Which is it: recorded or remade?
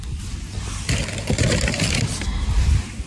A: recorded